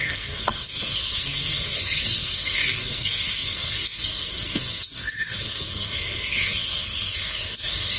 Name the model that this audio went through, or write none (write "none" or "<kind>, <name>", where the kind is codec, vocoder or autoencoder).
codec, SNAC